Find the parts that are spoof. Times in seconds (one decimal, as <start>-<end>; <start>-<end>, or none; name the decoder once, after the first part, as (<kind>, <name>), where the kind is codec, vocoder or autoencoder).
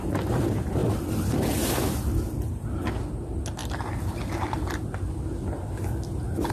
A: none